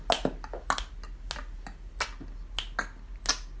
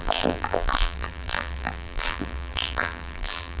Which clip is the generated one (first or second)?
second